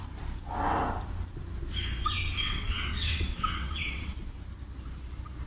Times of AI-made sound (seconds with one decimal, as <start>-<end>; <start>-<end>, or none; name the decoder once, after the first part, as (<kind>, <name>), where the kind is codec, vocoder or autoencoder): 2.4-4.2 (vocoder, WaveNeXt)